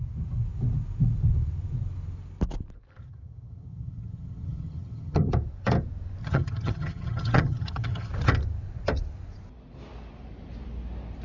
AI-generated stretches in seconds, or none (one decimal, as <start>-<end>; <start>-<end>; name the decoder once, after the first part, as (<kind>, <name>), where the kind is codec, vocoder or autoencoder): 3.0-5.3 (vocoder, HiFi-GAN); 6.2-8.1